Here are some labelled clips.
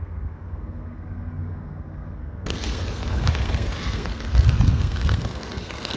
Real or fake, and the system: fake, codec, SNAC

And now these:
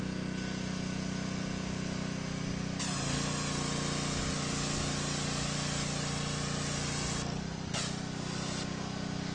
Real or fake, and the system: real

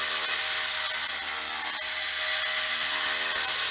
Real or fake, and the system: real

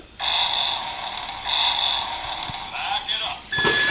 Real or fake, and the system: real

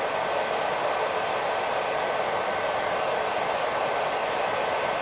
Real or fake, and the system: real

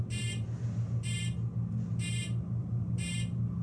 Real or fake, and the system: real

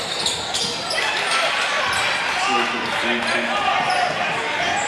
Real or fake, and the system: real